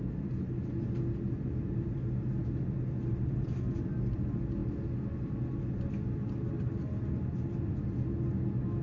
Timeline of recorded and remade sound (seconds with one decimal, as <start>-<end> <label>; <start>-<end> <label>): 0.0-2.4 recorded; 2.4-4.0 remade; 4.0-8.8 recorded